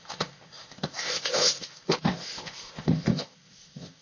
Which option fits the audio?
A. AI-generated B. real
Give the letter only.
A